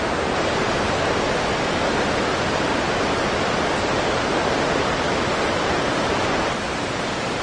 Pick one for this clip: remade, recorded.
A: recorded